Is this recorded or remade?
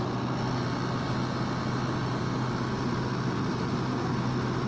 recorded